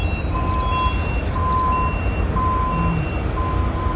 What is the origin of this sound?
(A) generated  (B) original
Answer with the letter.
B